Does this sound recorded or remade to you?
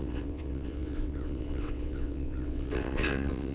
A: remade